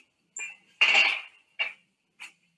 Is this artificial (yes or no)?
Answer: no